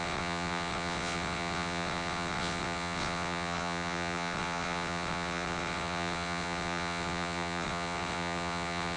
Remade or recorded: remade